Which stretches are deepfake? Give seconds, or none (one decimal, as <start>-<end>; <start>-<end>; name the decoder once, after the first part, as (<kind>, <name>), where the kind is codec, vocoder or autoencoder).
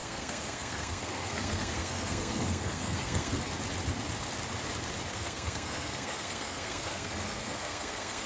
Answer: 0.0-3.3 (codec, SNAC); 5.1-8.3